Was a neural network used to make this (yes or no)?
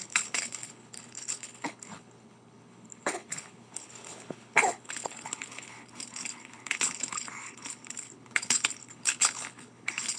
yes